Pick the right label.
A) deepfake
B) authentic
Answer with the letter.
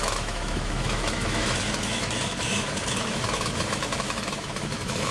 A